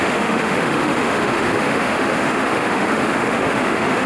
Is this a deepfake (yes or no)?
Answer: yes